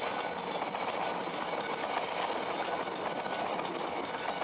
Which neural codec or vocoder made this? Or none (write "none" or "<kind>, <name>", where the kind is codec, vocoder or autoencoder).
none